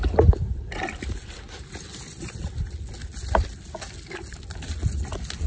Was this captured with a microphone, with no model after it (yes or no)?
yes